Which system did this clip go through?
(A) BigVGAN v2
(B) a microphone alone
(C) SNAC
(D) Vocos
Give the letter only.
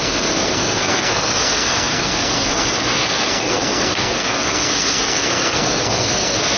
C